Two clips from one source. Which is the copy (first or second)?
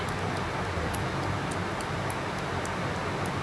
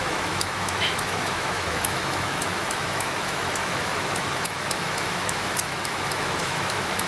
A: second